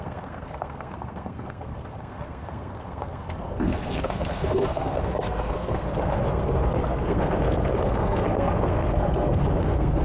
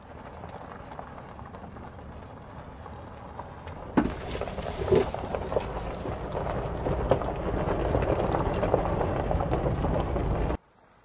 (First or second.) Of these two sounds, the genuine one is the second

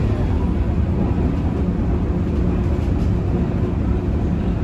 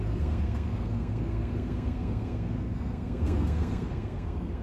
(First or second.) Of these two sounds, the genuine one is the first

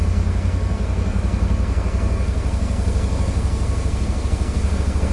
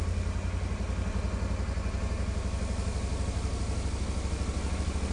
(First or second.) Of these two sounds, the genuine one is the second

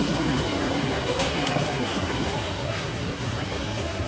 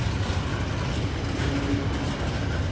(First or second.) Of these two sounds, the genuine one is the second